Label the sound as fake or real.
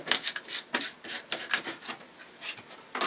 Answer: real